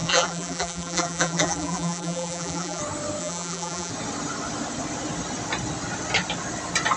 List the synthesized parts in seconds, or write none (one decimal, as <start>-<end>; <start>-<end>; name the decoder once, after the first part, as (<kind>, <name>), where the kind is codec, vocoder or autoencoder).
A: 0.0-2.8 (vocoder, BigVGAN v2); 3.2-3.9